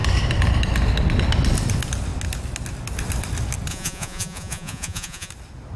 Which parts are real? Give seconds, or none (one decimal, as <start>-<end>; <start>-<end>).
0.0-3.7; 5.3-5.8